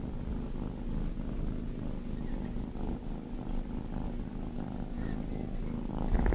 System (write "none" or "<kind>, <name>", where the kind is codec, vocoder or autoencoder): none